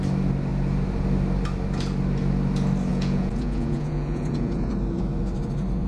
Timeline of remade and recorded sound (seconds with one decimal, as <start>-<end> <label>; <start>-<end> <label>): 0.0-2.9 recorded; 2.9-4.7 remade; 4.7-5.9 recorded